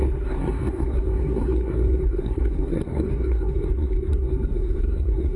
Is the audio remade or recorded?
remade